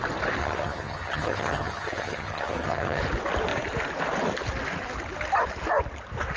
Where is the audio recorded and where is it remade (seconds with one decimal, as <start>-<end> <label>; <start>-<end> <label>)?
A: 0.0-0.4 recorded; 0.4-3.0 remade; 3.0-6.4 recorded